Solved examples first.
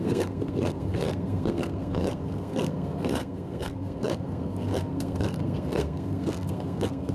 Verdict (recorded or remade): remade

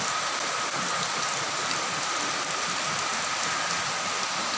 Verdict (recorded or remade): recorded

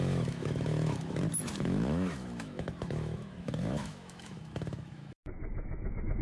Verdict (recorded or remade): remade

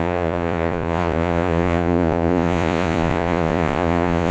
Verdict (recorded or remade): remade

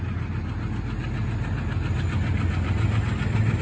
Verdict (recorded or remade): recorded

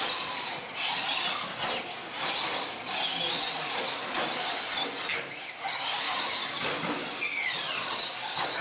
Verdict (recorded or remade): recorded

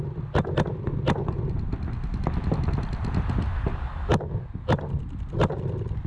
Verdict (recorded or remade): recorded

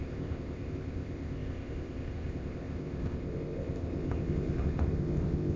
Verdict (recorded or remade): remade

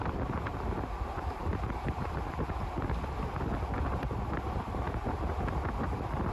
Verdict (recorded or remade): recorded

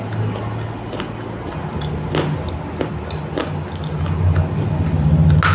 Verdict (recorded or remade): recorded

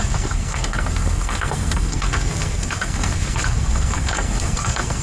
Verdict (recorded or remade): remade